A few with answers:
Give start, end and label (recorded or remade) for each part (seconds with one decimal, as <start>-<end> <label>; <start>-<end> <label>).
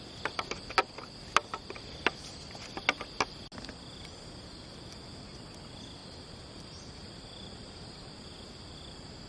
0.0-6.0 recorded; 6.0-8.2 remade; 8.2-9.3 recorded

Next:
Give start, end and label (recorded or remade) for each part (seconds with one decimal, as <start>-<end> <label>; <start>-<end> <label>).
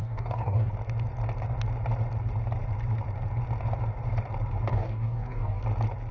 0.0-0.7 remade; 0.7-4.7 recorded; 4.7-5.6 remade; 5.6-6.1 recorded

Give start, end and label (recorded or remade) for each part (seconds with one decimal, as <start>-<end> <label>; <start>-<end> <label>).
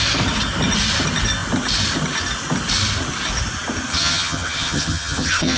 0.0-3.9 recorded; 3.9-5.6 remade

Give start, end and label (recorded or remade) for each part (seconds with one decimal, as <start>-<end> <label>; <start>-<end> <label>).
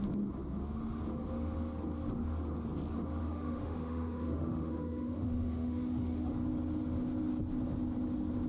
0.0-3.2 recorded; 3.2-6.3 remade; 6.3-8.5 recorded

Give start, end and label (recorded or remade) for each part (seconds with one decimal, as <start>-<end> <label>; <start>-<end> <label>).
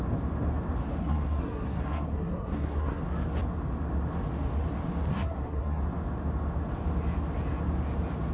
0.0-1.0 recorded; 1.0-3.0 remade; 3.0-5.1 recorded; 5.1-5.8 remade; 5.8-8.3 recorded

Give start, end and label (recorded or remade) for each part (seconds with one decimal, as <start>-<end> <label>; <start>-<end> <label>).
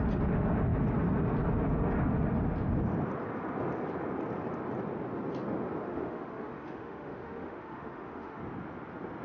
0.0-5.8 recorded; 5.8-8.4 remade; 8.4-9.2 recorded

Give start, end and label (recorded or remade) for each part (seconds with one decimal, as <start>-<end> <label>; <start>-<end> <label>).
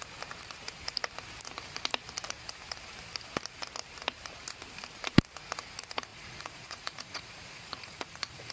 0.0-6.1 recorded; 6.1-8.5 remade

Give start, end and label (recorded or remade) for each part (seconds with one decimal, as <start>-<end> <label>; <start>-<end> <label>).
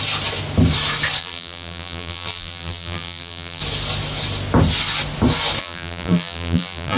0.0-1.2 recorded; 1.2-3.6 remade; 3.6-5.6 recorded; 5.6-7.0 remade